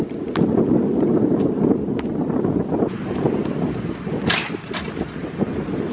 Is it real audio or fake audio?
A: real